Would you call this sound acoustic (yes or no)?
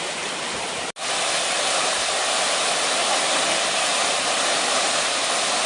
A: yes